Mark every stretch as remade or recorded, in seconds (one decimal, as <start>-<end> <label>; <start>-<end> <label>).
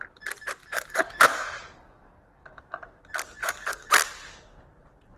0.0-0.6 recorded; 0.6-2.6 remade; 2.6-3.4 recorded; 3.4-3.9 remade; 3.9-5.2 recorded